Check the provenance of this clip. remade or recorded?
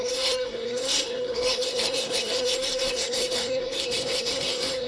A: remade